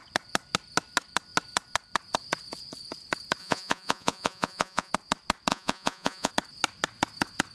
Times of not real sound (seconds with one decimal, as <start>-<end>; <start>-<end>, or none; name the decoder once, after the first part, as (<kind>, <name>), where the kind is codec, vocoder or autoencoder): 3.4-4.9 (vocoder, Vocos); 5.5-6.3